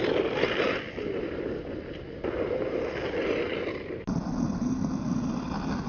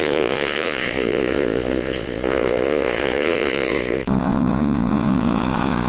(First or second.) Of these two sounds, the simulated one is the second